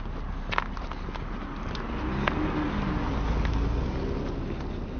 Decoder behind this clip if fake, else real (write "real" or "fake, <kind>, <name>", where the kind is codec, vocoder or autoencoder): real